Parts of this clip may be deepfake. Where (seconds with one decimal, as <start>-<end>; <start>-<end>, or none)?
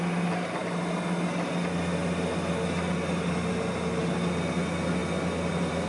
none